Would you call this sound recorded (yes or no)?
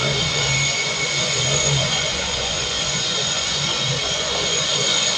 no